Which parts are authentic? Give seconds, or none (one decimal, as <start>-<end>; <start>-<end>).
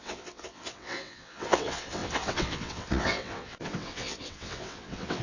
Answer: none